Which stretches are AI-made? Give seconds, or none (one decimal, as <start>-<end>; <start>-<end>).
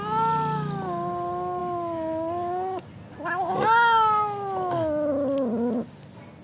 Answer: none